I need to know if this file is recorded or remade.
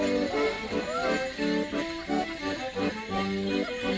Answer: recorded